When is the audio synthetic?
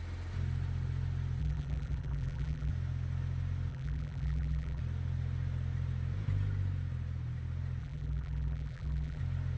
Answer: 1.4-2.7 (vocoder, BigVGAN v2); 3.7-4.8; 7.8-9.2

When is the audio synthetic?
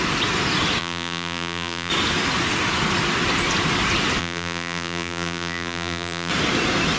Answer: 0.8-1.9 (vocoder, BigVGAN v2); 4.2-6.3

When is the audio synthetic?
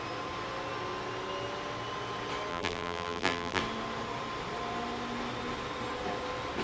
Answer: 2.5-3.6 (vocoder, BigVGAN v2)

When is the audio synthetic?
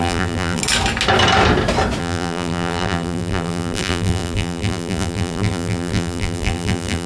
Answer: 0.0-0.6 (vocoder, BigVGAN v2); 2.0-7.1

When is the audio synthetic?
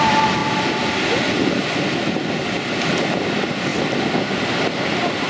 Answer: 0.0-0.4 (vocoder, BigVGAN v2); 2.8-3.7; 4.5-5.3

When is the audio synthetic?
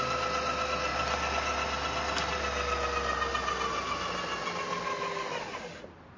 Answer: none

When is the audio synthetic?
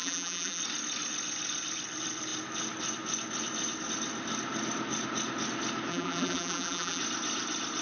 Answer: 0.0-0.6 (vocoder, BigVGAN v2); 5.9-7.0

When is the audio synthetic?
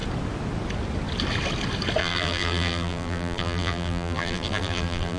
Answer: 2.0-5.2 (vocoder, BigVGAN v2)